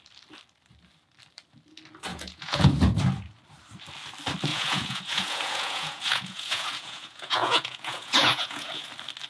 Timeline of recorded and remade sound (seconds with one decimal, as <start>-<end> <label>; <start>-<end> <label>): 0.0-2.1 recorded; 2.1-2.7 remade; 2.7-4.5 recorded; 4.5-8.9 remade; 8.9-9.3 recorded